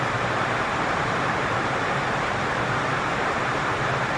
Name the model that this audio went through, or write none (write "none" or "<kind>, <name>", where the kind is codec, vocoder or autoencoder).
vocoder, BigVGAN v2